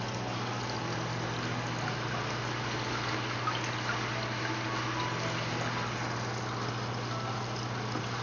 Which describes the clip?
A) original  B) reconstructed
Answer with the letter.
A